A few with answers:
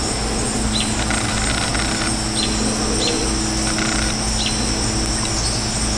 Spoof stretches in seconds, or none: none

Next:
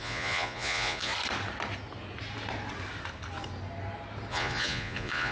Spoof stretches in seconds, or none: 0.0-1.1 (vocoder, Vocos); 4.3-5.3

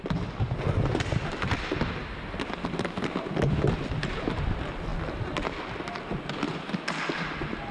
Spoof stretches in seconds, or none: none

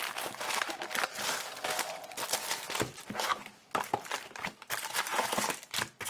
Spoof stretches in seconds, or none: none